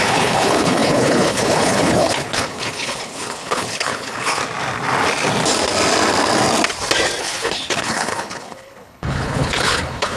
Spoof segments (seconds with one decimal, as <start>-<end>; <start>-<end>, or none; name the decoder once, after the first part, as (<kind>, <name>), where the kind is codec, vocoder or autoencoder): 0.0-4.4 (codec, HILCodec); 7.2-10.2